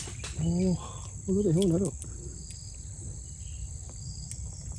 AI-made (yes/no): no